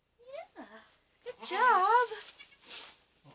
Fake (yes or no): no